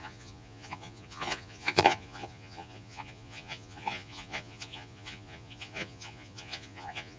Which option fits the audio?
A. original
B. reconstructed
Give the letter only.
B